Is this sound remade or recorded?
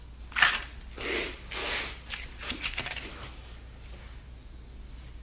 recorded